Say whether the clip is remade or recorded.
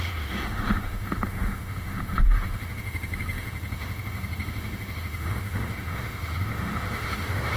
remade